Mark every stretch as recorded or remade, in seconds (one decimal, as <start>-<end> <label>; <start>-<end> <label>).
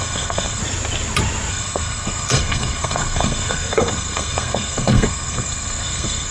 0.0-0.6 remade; 0.6-1.5 recorded; 1.5-6.3 remade